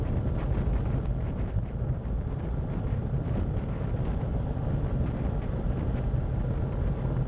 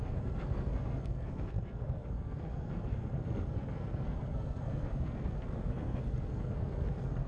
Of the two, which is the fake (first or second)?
second